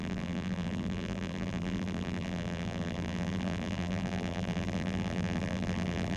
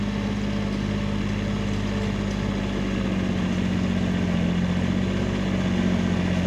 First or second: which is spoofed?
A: first